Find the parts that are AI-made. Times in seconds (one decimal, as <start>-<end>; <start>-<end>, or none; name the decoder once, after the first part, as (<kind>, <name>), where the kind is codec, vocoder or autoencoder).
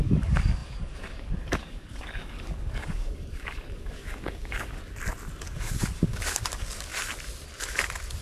0.0-4.8 (codec, DAC); 5.4-6.9